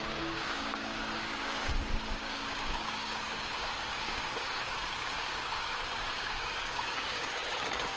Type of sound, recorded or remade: remade